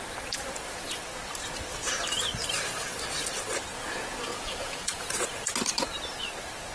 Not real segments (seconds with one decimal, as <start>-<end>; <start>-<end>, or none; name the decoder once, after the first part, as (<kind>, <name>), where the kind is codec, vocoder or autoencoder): 3.7-5.4 (vocoder, Vocos)